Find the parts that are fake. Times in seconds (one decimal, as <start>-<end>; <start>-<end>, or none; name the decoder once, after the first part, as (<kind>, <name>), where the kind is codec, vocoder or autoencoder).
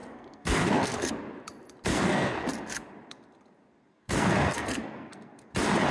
0.0-1.1 (codec, SNAC); 1.9-2.5; 3.9-5.5